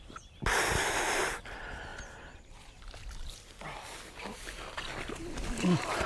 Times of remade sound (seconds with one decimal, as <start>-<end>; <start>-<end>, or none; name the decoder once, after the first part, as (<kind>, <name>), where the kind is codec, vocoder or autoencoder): 1.9-5.1 (vocoder, BigVGAN v2)